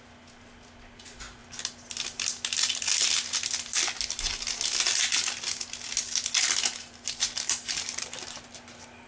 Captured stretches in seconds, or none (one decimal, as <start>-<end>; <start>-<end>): 0.0-9.1